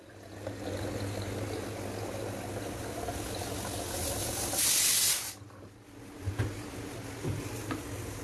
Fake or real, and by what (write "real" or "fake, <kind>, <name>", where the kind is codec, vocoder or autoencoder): real